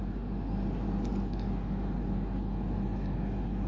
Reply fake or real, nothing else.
real